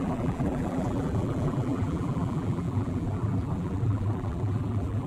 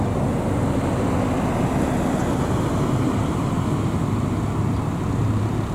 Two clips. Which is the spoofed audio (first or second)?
first